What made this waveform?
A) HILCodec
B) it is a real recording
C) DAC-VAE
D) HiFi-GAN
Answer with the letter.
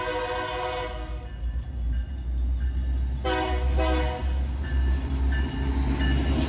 B